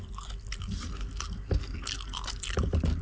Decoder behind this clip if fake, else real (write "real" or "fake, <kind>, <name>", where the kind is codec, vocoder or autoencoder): real